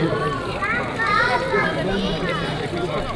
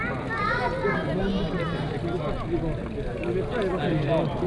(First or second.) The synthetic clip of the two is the first